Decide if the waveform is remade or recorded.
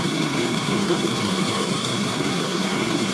remade